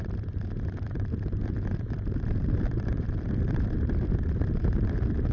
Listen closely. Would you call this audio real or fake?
fake